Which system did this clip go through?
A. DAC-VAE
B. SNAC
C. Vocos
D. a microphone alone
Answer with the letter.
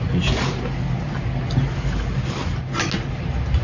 D